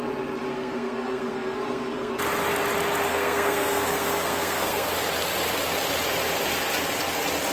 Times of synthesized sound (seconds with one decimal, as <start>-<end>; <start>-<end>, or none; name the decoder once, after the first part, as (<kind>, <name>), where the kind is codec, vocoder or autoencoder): 0.5-2.1 (codec, SNAC); 3.1-4.9